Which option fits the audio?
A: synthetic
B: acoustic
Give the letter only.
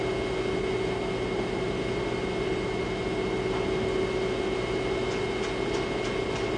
B